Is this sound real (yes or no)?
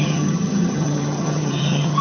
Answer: no